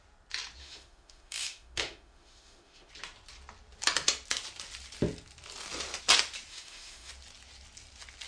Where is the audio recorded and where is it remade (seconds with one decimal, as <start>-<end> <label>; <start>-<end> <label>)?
0.0-0.6 recorded; 0.6-2.9 remade; 2.9-6.5 recorded; 6.5-7.1 remade; 7.1-8.3 recorded